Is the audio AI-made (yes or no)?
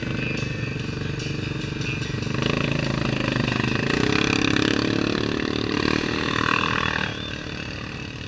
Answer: no